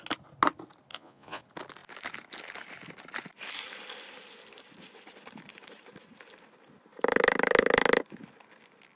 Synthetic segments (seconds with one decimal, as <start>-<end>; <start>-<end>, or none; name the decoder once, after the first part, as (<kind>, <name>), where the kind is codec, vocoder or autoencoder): 0.9-1.4 (vocoder, Vocos)